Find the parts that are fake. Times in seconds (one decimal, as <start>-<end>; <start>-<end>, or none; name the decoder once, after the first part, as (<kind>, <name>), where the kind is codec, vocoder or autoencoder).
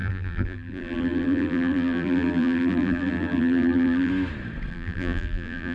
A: 0.0-4.1 (vocoder, BigVGAN v2); 4.7-5.7